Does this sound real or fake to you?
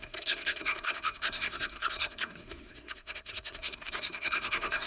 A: fake